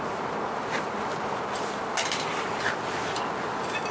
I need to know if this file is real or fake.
real